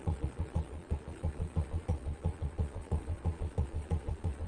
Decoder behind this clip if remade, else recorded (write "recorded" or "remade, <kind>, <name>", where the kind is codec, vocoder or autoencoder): remade, vocoder, Vocos